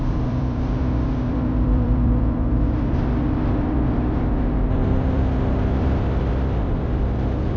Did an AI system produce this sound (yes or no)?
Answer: yes